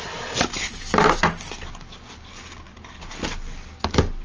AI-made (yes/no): no